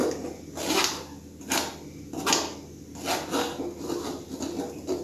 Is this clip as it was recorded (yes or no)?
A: yes